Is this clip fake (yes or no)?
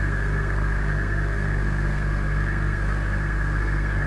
yes